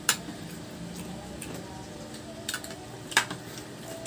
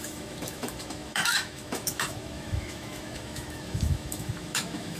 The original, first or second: first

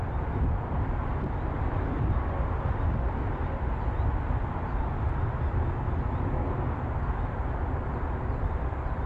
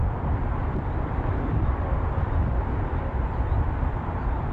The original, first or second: first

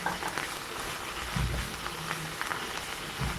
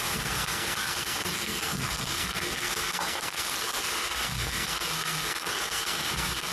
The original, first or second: first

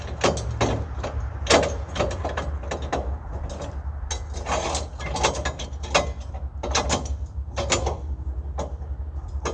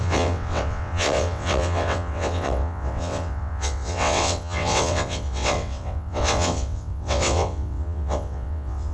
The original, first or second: first